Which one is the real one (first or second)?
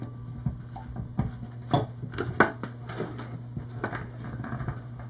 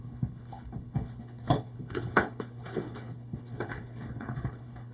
first